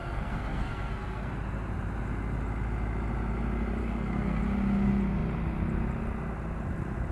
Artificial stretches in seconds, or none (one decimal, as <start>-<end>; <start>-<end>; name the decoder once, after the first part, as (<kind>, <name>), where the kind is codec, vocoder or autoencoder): 0.0-1.3 (codec, SNAC); 3.8-4.4